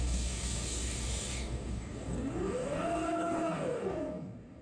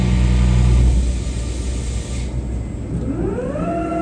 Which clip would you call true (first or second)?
second